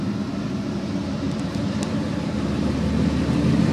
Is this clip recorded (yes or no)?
yes